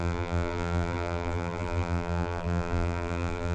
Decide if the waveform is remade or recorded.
remade